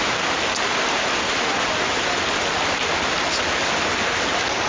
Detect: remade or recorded recorded